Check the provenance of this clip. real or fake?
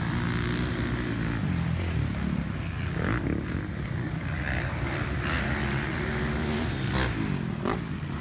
real